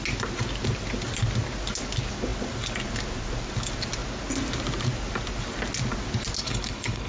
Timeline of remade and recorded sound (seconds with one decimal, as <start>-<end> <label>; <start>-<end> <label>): 0.0-6.4 recorded; 6.4-7.1 remade